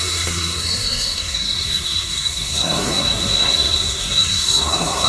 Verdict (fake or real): fake